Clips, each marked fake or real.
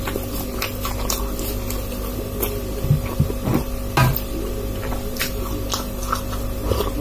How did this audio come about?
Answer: real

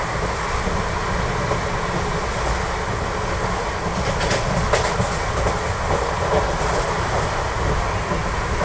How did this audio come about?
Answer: real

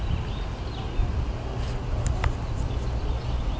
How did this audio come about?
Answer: real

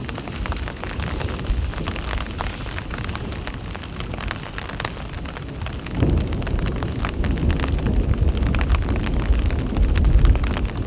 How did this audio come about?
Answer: real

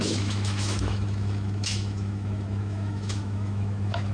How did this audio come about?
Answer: fake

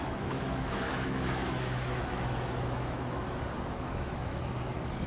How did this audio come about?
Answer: fake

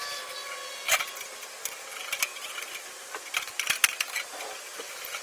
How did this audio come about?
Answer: real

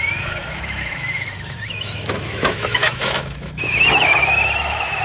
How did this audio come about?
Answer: fake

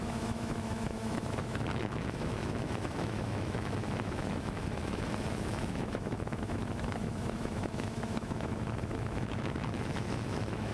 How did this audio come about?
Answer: fake